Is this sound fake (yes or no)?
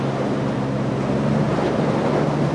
no